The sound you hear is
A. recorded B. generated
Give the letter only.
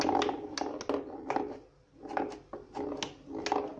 A